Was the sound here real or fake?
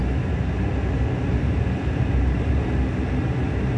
real